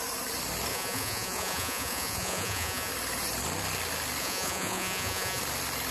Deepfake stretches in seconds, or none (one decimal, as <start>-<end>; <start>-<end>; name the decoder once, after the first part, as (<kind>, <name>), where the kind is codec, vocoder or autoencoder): 0.7-2.9 (vocoder, Vocos); 4.2-5.4